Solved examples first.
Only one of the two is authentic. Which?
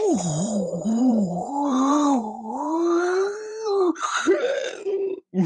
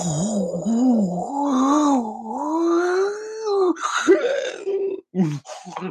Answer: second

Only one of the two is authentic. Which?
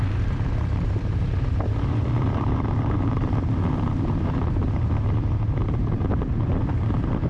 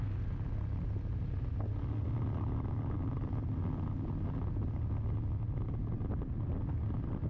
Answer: second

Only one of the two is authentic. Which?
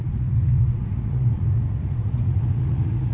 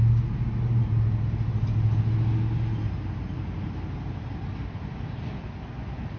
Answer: second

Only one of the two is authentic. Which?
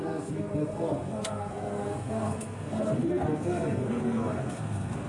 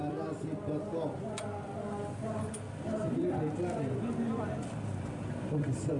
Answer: second